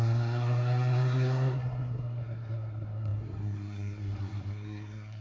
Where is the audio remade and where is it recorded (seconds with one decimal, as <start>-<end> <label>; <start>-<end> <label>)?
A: 0.0-5.2 remade